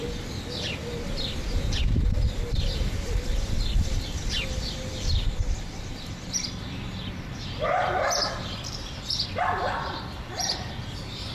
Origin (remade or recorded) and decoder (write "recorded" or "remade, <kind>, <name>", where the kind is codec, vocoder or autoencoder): remade, vocoder, BigVGAN v2